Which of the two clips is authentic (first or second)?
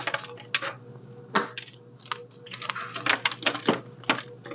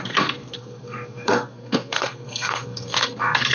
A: first